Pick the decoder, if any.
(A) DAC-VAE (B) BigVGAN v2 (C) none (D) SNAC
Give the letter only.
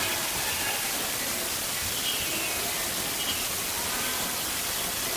C